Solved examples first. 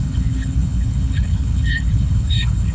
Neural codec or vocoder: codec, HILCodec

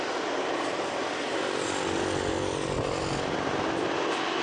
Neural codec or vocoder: none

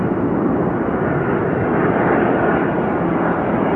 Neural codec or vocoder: none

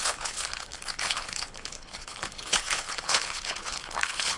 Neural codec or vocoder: codec, HILCodec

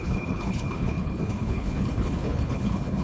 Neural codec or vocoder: codec, HILCodec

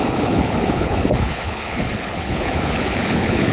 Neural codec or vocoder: codec, HILCodec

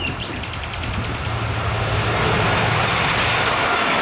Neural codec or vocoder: none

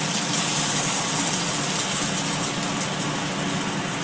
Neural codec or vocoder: none